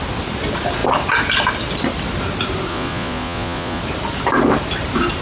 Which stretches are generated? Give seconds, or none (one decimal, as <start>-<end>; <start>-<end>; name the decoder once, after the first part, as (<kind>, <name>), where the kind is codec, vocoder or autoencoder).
2.7-3.8 (vocoder, Vocos)